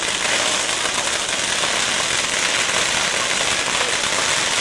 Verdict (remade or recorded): recorded